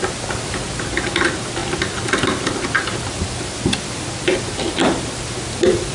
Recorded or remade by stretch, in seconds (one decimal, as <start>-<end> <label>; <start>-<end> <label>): 0.0-5.9 recorded